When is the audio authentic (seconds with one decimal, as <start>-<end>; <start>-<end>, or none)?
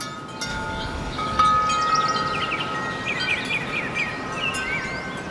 0.0-0.5; 1.4-5.3